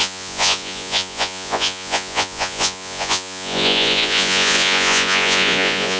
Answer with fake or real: fake